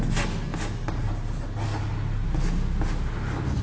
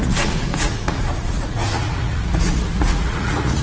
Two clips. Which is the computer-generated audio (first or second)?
second